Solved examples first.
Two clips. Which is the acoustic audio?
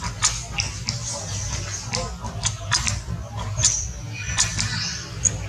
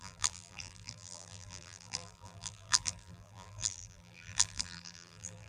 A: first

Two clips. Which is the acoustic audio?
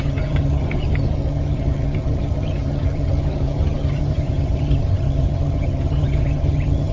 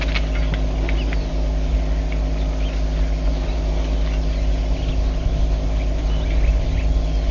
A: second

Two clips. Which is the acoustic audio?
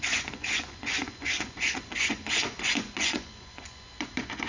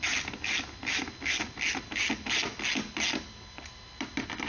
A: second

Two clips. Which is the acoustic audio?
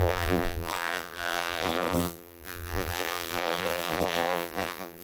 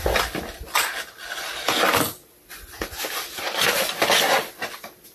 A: second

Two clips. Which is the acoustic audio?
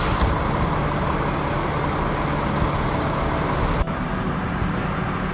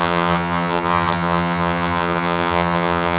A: first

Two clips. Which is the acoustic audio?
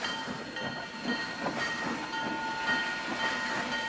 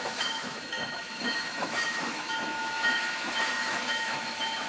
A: first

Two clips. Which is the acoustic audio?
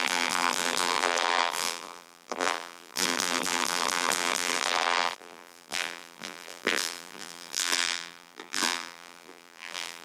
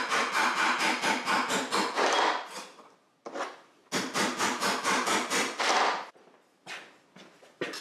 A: second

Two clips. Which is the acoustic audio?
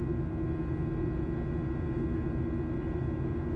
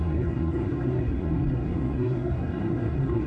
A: first